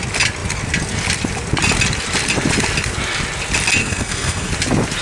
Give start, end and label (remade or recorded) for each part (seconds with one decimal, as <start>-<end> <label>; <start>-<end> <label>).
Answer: 0.0-3.8 recorded; 3.8-4.5 remade; 4.5-5.0 recorded

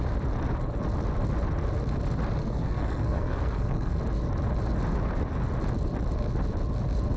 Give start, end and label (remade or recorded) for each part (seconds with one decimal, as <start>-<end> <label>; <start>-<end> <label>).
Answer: 0.0-2.4 recorded; 2.4-4.0 remade; 4.0-7.2 recorded